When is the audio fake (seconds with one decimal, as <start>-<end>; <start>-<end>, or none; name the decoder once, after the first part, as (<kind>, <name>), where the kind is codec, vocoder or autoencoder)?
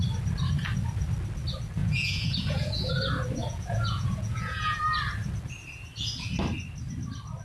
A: 1.8-2.9 (vocoder, Vocos); 3.4-4.8